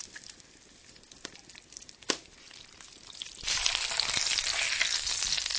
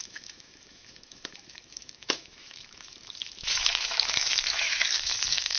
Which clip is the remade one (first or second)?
second